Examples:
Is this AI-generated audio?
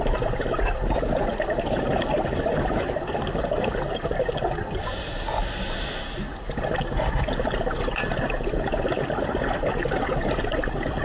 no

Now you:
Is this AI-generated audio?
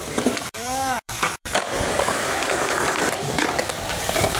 yes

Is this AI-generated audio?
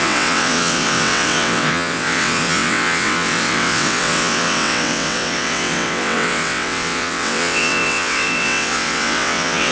yes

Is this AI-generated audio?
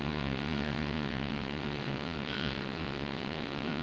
yes